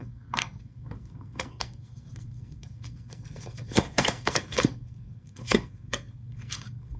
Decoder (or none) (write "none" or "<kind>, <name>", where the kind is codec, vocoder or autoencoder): codec, SNAC